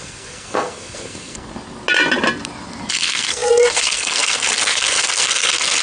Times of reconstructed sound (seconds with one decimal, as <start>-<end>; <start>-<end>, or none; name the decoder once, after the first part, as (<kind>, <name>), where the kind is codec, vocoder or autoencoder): 0.0-1.5 (codec, SNAC); 2.9-5.8